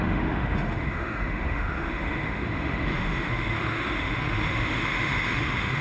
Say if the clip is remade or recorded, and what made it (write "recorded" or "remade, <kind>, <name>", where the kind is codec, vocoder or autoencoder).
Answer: remade, autoencoder, DAC-VAE